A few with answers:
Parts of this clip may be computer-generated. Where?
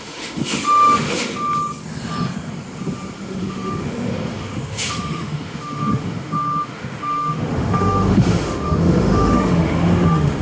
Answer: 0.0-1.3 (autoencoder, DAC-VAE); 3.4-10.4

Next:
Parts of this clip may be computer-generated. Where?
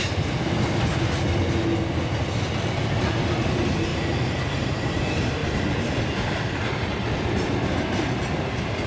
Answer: 3.9-5.0 (vocoder, BigVGAN v2); 5.4-6.0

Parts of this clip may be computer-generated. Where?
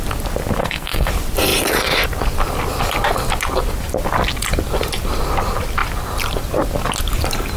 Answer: 0.6-1.1 (codec, SNAC)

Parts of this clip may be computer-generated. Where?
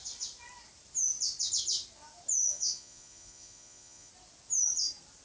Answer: 2.4-4.1 (vocoder, Vocos)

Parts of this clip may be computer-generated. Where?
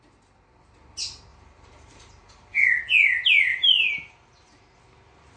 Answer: 1.3-2.8 (vocoder, BigVGAN v2); 3.5-4.8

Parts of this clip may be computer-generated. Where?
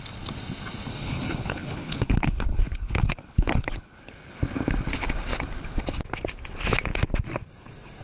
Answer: 0.9-4.0 (codec, HILCodec)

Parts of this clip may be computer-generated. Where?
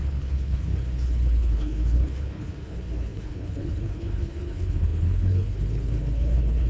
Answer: 0.0-6.7 (codec, HILCodec)